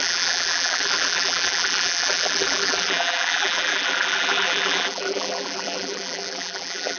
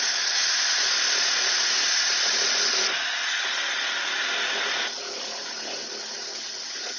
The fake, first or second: first